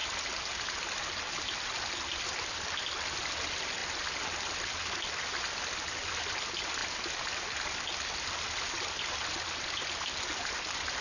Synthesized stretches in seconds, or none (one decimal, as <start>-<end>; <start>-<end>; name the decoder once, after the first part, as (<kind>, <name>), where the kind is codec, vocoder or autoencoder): none